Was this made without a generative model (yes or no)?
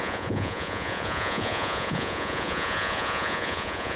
no